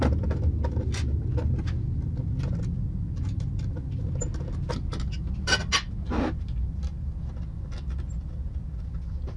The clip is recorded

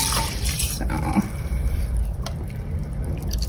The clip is remade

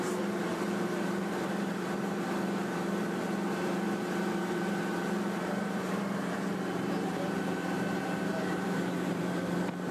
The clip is remade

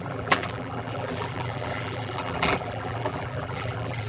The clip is remade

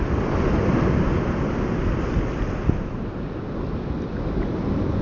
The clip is recorded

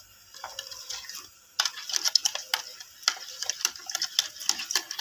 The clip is recorded